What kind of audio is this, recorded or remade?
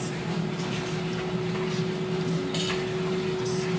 recorded